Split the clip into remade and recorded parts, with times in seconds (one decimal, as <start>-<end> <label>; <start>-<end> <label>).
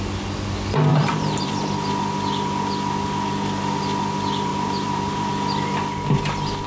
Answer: 0.0-0.9 recorded; 0.9-1.9 remade; 1.9-4.5 recorded; 4.5-5.3 remade; 5.3-6.7 recorded